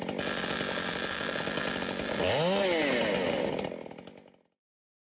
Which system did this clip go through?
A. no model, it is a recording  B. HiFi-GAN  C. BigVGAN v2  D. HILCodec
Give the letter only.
A